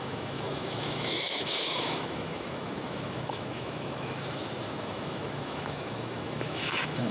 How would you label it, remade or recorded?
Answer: remade